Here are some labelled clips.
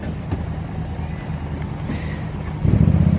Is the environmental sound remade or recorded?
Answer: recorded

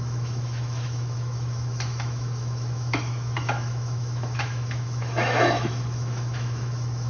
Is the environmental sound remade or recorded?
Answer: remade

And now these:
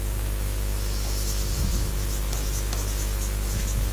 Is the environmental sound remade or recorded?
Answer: remade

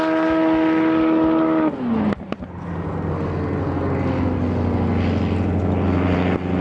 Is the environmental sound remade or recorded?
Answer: recorded